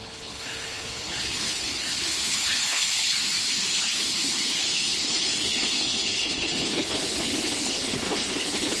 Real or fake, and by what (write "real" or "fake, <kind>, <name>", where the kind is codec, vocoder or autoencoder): fake, codec, HILCodec